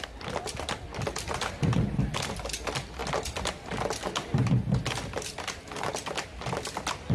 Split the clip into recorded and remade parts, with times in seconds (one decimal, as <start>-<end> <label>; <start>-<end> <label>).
0.0-7.1 recorded